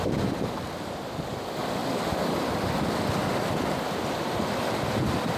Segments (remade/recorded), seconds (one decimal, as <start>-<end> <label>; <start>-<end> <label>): 0.0-1.8 recorded; 1.8-2.4 remade; 2.4-5.4 recorded